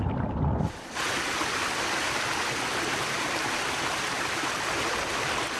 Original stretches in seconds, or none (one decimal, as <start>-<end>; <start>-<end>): 0.0-2.9; 4.3-5.6